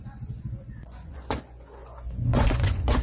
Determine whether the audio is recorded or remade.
remade